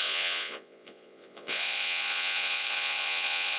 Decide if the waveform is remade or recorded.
remade